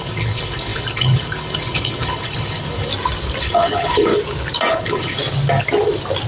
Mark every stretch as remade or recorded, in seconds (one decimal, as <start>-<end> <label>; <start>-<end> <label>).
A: 0.0-2.9 remade; 2.9-3.4 recorded; 3.4-4.1 remade; 4.1-4.7 recorded; 4.7-5.2 remade; 5.2-6.3 recorded